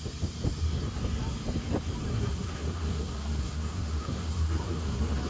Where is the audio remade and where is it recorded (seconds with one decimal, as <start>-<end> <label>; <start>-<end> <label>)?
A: 0.0-2.1 recorded; 2.1-5.3 remade